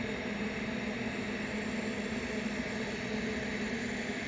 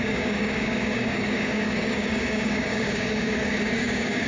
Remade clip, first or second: second